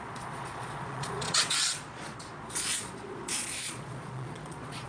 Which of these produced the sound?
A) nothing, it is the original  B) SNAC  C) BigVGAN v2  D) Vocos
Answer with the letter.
D